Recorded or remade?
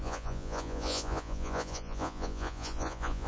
remade